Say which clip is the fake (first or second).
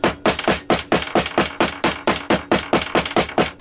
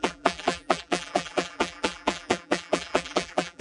second